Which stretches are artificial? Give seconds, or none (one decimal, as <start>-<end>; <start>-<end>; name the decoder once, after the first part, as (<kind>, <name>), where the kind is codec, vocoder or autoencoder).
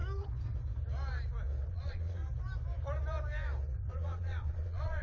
1.7-2.2 (vocoder, Vocos); 3.9-5.0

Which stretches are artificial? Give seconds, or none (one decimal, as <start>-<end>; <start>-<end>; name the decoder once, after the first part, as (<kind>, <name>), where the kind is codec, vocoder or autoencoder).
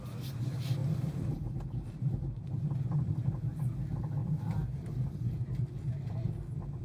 0.8-3.1 (vocoder, BigVGAN v2); 4.2-6.3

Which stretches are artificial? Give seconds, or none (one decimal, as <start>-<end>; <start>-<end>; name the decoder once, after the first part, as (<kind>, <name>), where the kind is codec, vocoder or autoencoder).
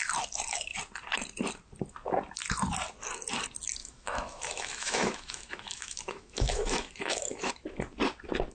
3.8-7.5 (autoencoder, DAC-VAE)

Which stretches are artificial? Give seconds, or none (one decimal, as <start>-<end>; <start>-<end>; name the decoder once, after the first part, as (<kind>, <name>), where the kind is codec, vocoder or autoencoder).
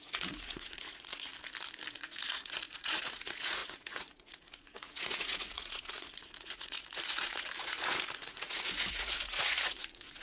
0.0-1.3 (vocoder, Vocos); 1.9-10.2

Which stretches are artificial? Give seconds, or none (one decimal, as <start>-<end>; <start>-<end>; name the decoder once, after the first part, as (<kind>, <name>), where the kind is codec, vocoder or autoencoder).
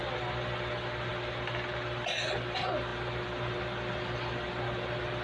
none